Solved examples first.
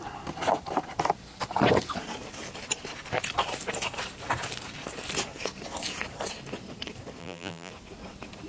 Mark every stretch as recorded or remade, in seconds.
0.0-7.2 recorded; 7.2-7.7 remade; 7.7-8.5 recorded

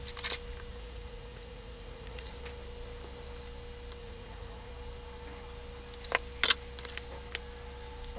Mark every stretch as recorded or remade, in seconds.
0.0-0.7 recorded; 0.7-2.3 remade; 2.3-4.0 recorded; 4.0-4.7 remade; 4.7-8.2 recorded

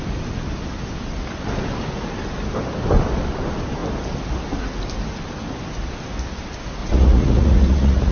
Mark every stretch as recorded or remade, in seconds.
0.0-6.8 recorded; 6.8-8.1 remade

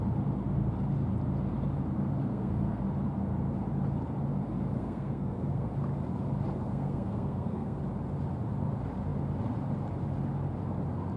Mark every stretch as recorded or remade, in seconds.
0.0-2.2 recorded; 2.2-2.8 remade; 2.8-4.8 recorded; 4.8-5.7 remade; 5.7-6.6 recorded; 6.6-7.8 remade; 7.8-11.2 recorded